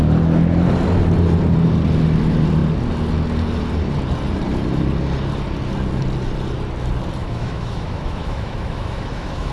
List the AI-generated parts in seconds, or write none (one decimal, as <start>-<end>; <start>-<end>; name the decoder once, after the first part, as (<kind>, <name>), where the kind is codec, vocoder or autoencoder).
7.2-9.5 (autoencoder, DAC-VAE)